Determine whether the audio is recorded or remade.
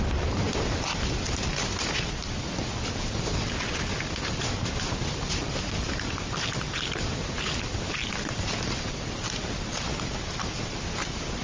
recorded